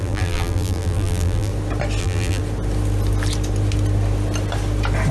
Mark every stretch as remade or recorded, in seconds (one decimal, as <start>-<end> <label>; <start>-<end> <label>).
0.0-1.5 remade; 1.5-2.0 recorded; 2.0-2.4 remade; 2.4-5.1 recorded